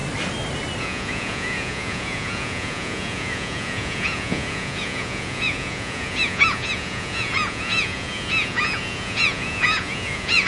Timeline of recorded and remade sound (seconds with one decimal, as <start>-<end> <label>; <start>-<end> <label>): 0.0-0.8 recorded; 0.8-10.5 remade

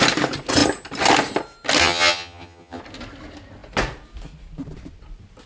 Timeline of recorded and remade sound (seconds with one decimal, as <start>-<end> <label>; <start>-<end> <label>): 0.0-1.8 recorded; 1.8-2.8 remade; 2.8-5.5 recorded

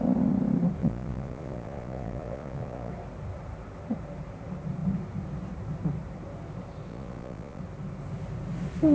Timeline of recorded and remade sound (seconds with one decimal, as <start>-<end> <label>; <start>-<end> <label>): 0.0-0.8 recorded; 0.8-2.9 remade; 2.9-6.9 recorded; 6.9-7.6 remade; 7.6-8.9 recorded

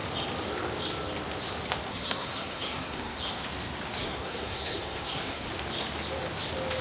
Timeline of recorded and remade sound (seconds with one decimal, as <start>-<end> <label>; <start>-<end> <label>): 0.0-1.9 recorded; 1.9-3.2 remade; 3.2-4.0 recorded; 4.0-5.5 remade; 5.5-6.8 recorded

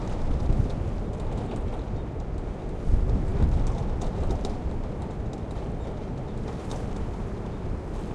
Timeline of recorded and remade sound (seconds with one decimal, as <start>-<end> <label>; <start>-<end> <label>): 0.0-8.1 recorded